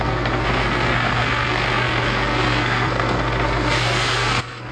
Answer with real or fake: fake